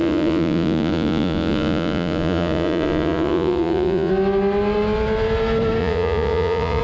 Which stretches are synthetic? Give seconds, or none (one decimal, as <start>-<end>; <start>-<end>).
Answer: 0.0-4.1; 5.8-6.8